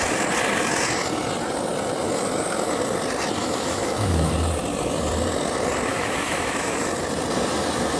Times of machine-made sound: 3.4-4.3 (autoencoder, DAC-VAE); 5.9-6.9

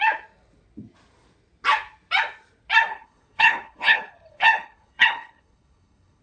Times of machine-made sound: 2.9-6.2 (codec, HILCodec)